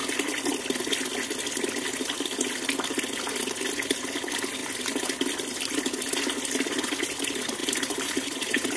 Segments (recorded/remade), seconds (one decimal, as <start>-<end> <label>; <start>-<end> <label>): 0.0-7.6 recorded; 7.6-8.8 remade